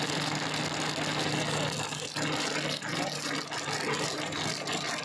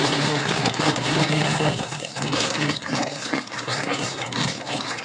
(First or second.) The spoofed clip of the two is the second